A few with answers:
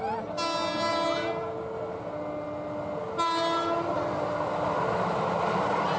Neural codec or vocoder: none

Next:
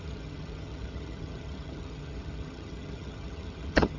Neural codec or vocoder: vocoder, HiFi-GAN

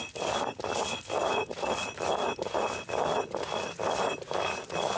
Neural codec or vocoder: none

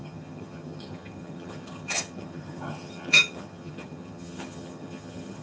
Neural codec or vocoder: vocoder, HiFi-GAN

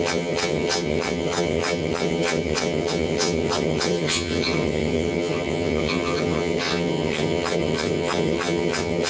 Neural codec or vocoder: vocoder, HiFi-GAN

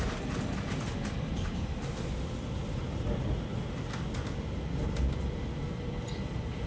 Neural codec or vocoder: none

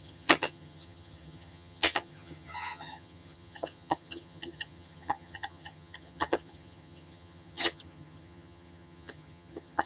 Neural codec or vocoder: vocoder, HiFi-GAN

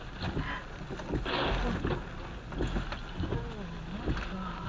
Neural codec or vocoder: none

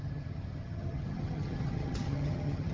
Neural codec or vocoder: vocoder, HiFi-GAN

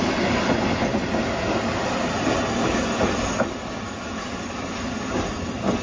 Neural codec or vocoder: none